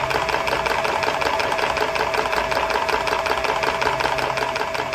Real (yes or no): yes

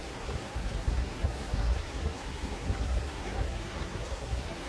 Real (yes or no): no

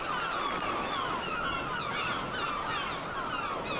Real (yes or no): yes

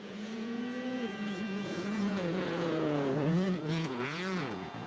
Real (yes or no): no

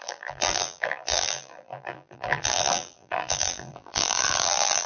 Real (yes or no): no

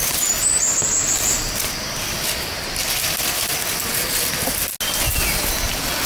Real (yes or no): yes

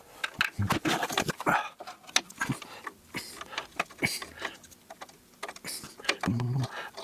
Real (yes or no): yes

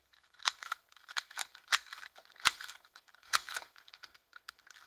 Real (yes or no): no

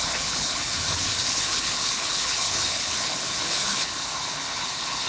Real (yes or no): no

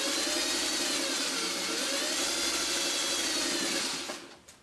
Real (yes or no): yes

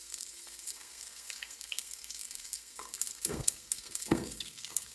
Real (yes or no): no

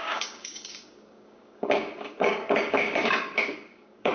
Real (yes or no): no